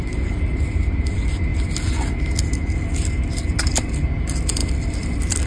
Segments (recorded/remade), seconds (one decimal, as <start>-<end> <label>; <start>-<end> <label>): 0.0-1.5 remade; 1.5-3.6 recorded; 3.6-5.5 remade

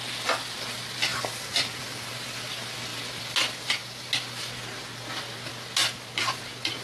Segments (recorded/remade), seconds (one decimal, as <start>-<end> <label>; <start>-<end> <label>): 0.0-6.8 recorded

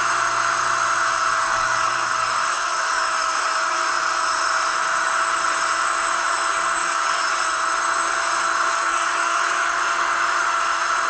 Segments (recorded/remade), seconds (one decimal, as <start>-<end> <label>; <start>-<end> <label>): 0.0-1.2 recorded; 1.2-3.9 remade; 3.9-6.8 recorded; 6.8-7.3 remade; 7.3-8.7 recorded; 8.7-9.7 remade; 9.7-11.1 recorded

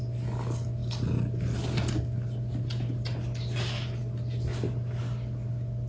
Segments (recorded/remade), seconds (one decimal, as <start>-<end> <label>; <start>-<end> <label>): 0.0-5.9 recorded

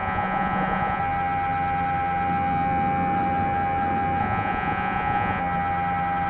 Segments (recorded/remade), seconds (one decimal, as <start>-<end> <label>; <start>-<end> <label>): 0.0-1.0 remade; 1.0-4.2 recorded; 4.2-5.4 remade; 5.4-6.3 recorded